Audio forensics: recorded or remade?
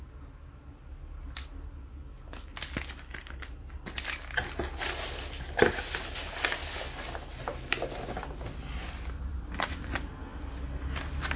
recorded